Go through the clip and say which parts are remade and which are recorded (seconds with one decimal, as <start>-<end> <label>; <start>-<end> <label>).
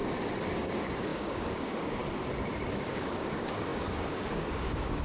0.0-0.5 recorded; 0.5-2.0 remade; 2.0-2.7 recorded; 2.7-5.0 remade